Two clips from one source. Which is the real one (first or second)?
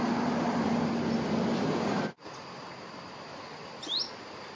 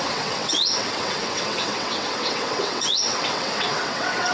first